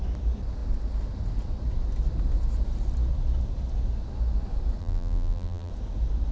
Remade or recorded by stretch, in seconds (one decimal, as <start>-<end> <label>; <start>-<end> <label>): 0.0-4.8 recorded; 4.8-5.7 remade; 5.7-6.3 recorded